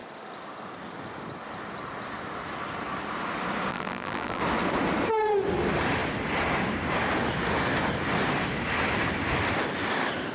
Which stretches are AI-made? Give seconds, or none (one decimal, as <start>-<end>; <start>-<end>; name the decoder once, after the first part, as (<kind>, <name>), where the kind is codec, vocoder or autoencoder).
3.7-4.4 (vocoder, BigVGAN v2)